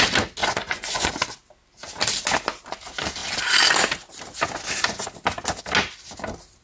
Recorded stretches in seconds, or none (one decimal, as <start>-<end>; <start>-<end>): 0.0-0.4; 1.1-6.6